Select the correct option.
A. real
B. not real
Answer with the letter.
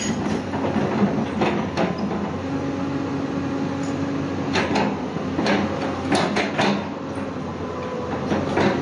A